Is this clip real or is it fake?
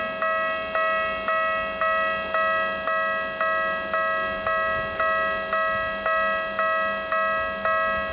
real